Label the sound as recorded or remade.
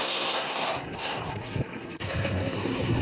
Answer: remade